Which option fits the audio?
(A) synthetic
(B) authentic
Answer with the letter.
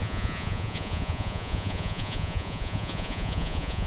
A